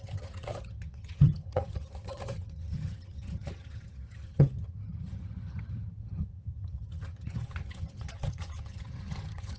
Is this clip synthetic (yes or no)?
yes